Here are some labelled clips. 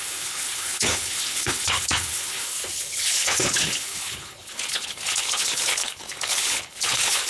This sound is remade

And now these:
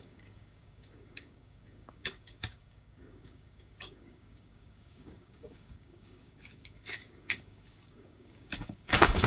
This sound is remade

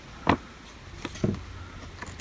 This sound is recorded